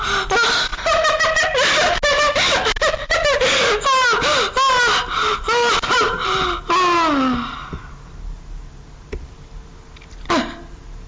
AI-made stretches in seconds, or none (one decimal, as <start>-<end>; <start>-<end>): 0.7-1.2; 5.3-6.4